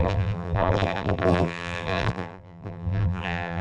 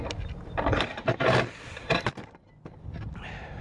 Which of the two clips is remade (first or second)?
first